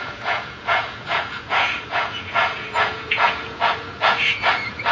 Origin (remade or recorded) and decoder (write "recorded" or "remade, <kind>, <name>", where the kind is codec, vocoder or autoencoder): remade, vocoder, Vocos